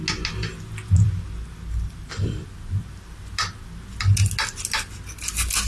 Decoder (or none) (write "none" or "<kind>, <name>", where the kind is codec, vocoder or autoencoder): none